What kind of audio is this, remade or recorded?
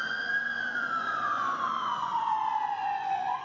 remade